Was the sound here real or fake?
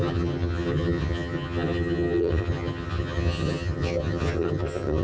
fake